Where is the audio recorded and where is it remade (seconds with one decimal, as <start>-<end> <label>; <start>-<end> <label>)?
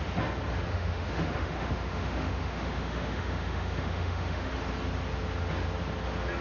0.0-0.7 recorded; 0.7-4.5 remade; 4.5-6.4 recorded